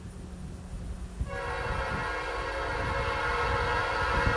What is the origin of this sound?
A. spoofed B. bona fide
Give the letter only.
B